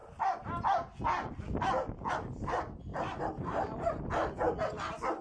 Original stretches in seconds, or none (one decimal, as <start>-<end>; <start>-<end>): 0.0-2.9; 4.1-5.2